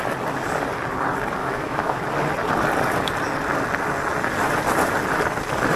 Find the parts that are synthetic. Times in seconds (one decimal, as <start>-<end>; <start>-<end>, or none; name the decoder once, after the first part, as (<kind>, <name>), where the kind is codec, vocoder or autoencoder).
1.4-2.0 (autoencoder, DAC-VAE)